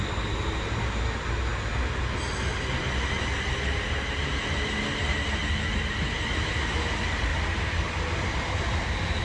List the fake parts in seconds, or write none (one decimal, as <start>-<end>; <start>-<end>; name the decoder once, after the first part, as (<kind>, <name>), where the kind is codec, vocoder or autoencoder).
none